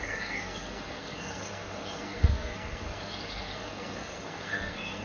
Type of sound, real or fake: fake